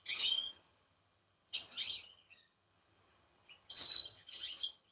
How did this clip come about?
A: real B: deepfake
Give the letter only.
B